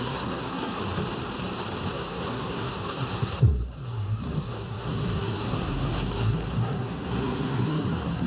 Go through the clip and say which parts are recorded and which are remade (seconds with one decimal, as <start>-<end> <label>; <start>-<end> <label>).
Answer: 0.0-0.8 remade; 0.8-1.9 recorded; 1.9-8.3 remade